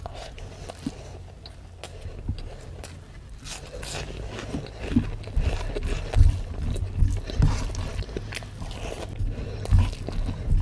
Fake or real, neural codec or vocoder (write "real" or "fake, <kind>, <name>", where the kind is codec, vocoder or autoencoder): real